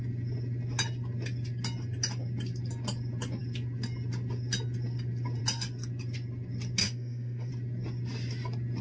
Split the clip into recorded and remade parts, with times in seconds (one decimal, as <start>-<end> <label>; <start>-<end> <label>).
0.0-6.8 recorded; 6.8-7.5 remade; 7.5-8.8 recorded